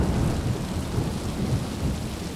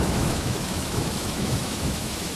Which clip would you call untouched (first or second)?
first